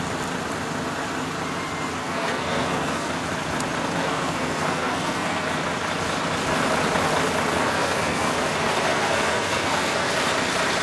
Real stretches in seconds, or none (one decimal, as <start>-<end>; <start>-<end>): 0.0-2.0; 3.1-4.0; 5.6-7.5; 8.5-8.9; 10.1-10.8